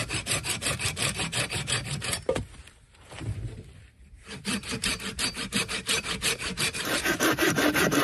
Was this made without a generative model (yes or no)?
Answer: no